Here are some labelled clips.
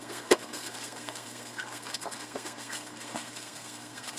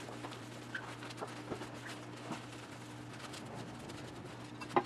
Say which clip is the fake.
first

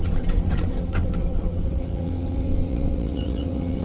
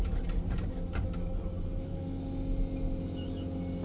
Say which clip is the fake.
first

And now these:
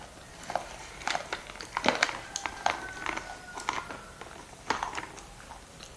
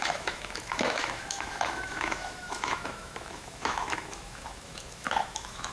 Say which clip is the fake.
second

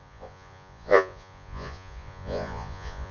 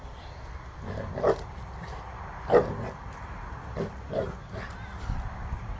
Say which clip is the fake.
first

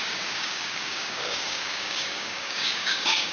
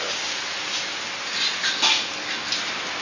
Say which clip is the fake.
first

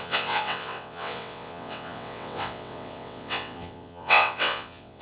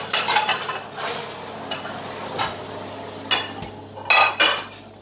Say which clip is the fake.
first